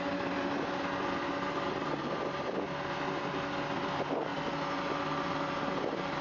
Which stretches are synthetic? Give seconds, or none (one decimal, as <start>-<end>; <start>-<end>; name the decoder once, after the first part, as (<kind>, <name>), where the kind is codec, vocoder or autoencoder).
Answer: none